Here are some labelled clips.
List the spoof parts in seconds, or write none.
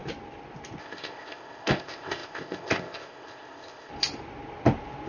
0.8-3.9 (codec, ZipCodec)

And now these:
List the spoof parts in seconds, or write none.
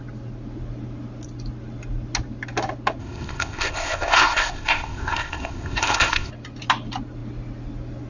3.0-6.3 (codec, ZipCodec)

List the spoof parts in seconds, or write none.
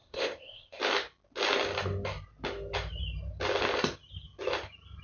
0.0-0.8 (codec, ZipCodec)